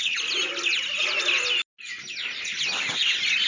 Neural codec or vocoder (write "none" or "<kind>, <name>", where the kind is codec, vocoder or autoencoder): none